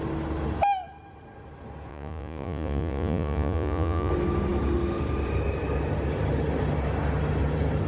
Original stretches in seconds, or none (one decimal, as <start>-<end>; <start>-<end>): 0.0-1.9; 4.1-7.9